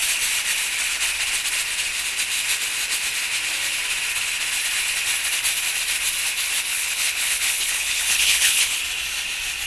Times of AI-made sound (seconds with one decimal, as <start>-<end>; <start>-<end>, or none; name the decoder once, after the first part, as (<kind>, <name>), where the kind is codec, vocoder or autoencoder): 6.7-8.8 (codec, HILCodec)

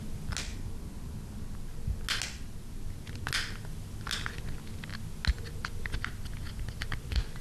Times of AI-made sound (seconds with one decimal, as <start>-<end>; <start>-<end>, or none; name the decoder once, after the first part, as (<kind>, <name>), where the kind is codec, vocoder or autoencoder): none

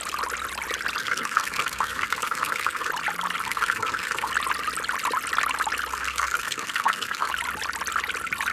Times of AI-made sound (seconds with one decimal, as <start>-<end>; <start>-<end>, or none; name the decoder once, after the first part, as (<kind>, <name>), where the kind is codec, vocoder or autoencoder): 1.0-2.9 (codec, SNAC); 3.4-4.3; 5.9-7.3